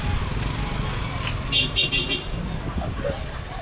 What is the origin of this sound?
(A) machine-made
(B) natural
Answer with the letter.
B